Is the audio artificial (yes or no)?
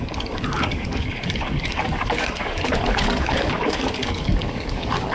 yes